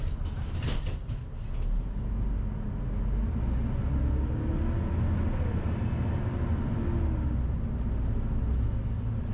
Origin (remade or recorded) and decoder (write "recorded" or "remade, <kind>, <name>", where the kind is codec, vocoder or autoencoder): recorded